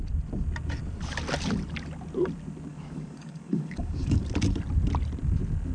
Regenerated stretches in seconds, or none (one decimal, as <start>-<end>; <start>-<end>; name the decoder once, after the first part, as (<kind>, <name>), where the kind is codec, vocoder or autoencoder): 2.7-4.2 (codec, DAC)